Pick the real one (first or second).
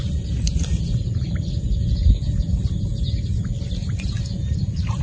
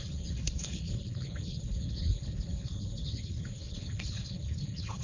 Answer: first